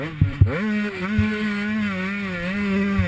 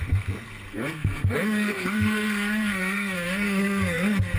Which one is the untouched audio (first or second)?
first